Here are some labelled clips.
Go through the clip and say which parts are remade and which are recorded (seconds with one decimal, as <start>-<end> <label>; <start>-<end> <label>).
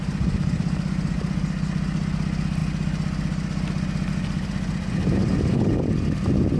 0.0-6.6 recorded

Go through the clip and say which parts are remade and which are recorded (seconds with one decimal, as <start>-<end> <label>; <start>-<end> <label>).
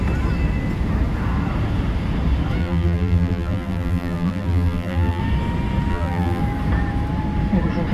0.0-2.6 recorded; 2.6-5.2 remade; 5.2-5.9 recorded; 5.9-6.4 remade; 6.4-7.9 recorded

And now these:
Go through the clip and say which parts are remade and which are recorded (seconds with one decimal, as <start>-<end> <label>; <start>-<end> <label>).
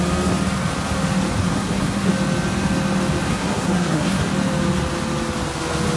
0.0-1.4 recorded; 1.4-2.1 remade; 2.1-3.3 recorded; 3.3-4.3 remade; 4.3-6.0 recorded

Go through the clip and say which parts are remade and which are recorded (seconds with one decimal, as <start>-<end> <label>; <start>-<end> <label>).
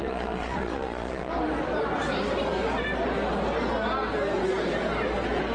0.0-1.3 remade; 1.3-5.5 recorded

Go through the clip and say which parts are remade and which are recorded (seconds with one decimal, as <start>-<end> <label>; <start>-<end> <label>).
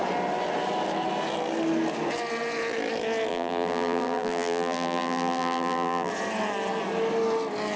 0.0-3.3 recorded; 3.3-6.1 remade; 6.1-7.8 recorded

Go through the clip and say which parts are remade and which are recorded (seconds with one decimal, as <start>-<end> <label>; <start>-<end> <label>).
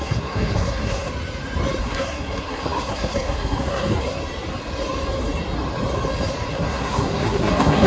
0.0-1.1 remade; 1.1-1.8 recorded; 1.8-4.2 remade; 4.2-6.5 recorded; 6.5-7.9 remade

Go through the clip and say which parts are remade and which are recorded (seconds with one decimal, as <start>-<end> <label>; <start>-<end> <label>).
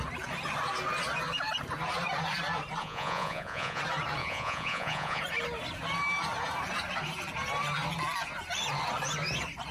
0.0-2.8 recorded; 2.8-3.8 remade; 3.8-4.2 recorded; 4.2-5.2 remade; 5.2-9.7 recorded